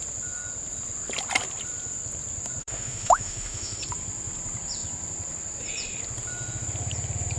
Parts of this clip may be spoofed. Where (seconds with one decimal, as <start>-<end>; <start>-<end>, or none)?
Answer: 2.6-3.8